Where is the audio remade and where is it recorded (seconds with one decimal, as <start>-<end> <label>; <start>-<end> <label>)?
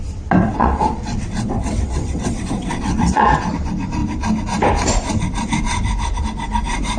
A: 0.0-0.4 recorded; 0.4-3.5 remade; 3.5-7.0 recorded